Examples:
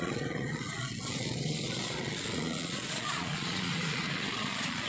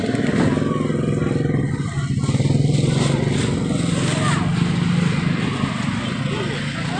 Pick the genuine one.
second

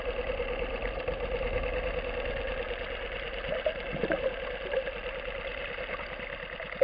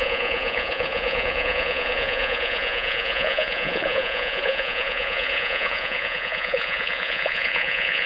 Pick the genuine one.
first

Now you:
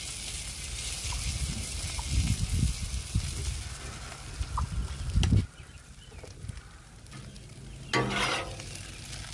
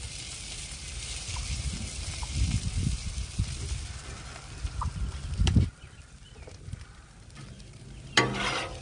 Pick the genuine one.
first